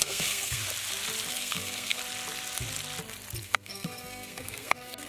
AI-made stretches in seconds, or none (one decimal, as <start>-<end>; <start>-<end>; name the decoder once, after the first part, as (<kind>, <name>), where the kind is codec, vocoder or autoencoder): 0.0-0.6 (codec, SNAC); 1.3-2.0; 3.4-5.1